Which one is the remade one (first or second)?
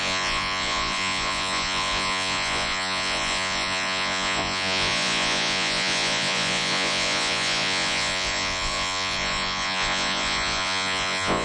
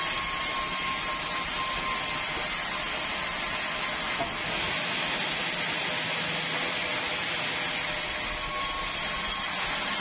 first